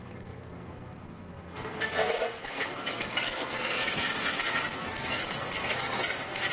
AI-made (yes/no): yes